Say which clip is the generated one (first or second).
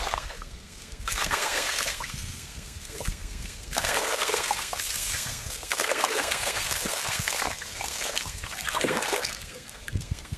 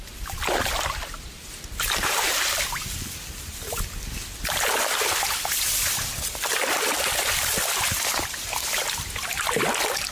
first